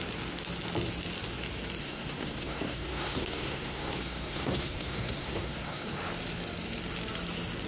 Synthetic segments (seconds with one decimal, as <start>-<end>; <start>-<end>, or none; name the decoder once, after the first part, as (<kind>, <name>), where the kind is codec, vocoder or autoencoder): 1.8-6.0 (codec, SNAC)